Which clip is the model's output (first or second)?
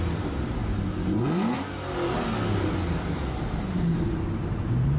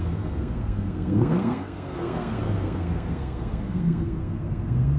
second